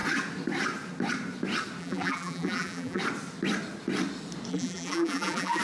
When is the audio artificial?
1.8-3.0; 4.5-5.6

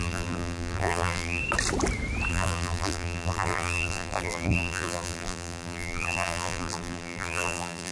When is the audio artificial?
0.0-1.4; 2.3-7.9

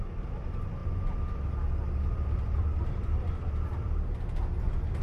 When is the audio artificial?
0.0-5.0

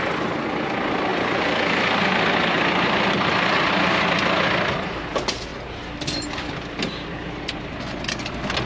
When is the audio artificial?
1.1-3.7; 5.5-7.7

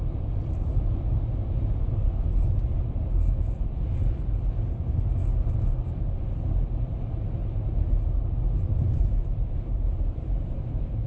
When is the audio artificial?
0.0-2.0; 6.8-7.4; 8.7-11.1

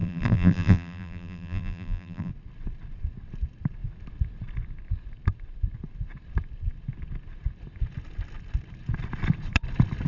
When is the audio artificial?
0.0-2.3

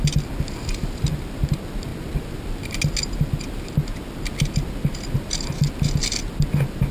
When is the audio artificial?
none